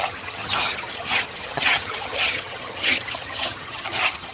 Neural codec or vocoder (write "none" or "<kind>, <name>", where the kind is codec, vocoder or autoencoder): vocoder, HiFi-GAN